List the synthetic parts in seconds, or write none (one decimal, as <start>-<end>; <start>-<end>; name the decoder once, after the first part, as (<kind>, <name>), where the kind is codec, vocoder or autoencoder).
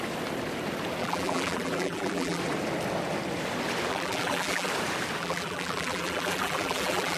1.0-2.4 (vocoder, BigVGAN v2); 3.9-4.7; 5.2-7.2